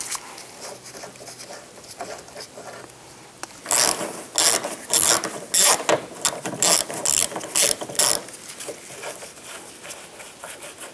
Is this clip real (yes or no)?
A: yes